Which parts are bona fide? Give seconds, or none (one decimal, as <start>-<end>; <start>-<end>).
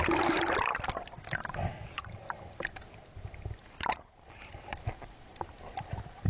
0.0-6.3